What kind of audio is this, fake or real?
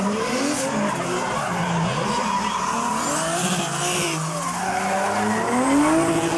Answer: real